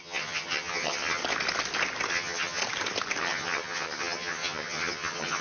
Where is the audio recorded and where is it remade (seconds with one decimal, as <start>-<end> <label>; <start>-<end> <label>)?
0.0-1.2 remade; 1.2-2.1 recorded; 2.1-2.6 remade; 2.6-3.2 recorded; 3.2-5.4 remade